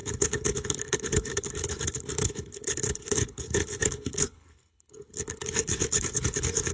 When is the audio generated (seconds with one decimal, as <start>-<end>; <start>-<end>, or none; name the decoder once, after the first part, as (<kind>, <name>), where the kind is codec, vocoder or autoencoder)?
0.0-6.7 (codec, HILCodec)